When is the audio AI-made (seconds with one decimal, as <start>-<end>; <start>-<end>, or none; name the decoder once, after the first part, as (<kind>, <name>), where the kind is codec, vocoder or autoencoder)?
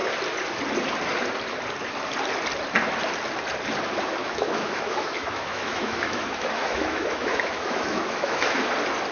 4.2-8.6 (autoencoder, DAC-VAE)